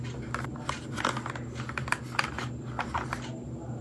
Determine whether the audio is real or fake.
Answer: real